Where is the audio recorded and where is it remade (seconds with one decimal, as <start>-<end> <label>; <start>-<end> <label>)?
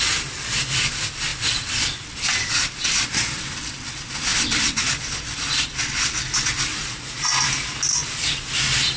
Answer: 0.0-6.7 recorded; 6.7-7.3 remade; 7.3-9.0 recorded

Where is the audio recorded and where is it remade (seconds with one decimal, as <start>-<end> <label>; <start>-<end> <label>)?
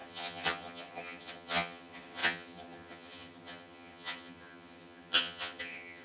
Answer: 0.0-6.0 remade